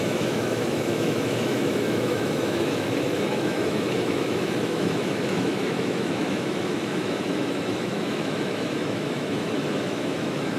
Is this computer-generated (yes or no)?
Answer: yes